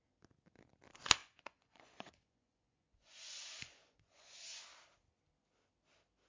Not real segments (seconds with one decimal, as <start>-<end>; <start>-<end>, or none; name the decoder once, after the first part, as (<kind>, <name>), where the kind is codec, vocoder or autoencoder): 1.2-4.6 (vocoder, Vocos)